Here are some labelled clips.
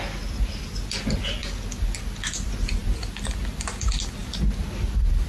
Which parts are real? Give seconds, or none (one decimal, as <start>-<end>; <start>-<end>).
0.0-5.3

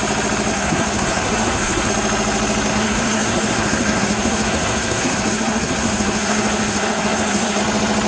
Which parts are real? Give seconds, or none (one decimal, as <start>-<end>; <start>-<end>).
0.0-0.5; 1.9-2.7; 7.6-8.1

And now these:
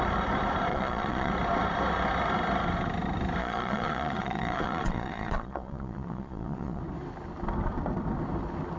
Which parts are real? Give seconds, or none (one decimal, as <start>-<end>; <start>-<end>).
0.0-0.7; 1.3-3.4; 6.8-8.8

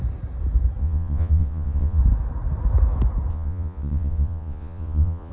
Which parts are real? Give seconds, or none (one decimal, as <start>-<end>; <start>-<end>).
0.0-0.8; 2.0-3.3

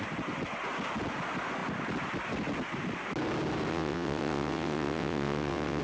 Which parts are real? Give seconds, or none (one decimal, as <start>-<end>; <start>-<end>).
0.0-3.7

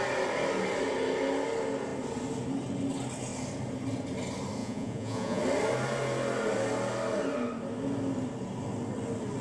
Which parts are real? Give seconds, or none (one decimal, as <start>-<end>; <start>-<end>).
0.0-4.6; 5.4-9.4

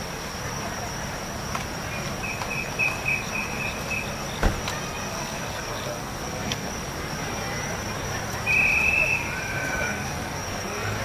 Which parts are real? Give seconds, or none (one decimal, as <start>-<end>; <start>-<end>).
0.0-5.1; 6.7-9.6